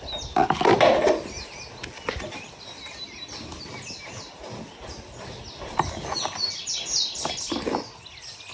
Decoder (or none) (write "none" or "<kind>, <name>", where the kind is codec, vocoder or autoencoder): none